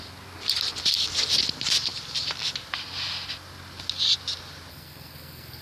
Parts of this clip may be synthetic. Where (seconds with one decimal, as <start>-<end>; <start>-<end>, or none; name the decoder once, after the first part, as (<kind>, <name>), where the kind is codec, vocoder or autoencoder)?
4.7-5.6 (codec, SNAC)